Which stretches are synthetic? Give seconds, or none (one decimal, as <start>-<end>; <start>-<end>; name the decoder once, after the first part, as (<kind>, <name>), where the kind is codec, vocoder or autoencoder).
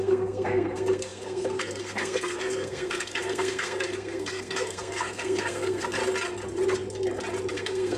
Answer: 0.0-6.0 (codec, SNAC); 7.5-8.0